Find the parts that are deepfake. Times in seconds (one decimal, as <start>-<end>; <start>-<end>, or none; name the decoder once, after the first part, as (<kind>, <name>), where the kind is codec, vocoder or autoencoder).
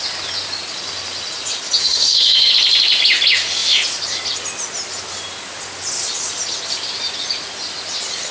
1.8-2.5 (codec, SNAC)